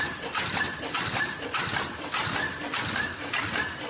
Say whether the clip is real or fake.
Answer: real